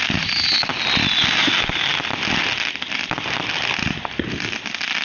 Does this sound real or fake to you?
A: real